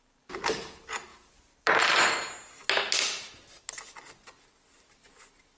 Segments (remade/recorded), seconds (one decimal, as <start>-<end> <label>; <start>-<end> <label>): 0.0-5.6 recorded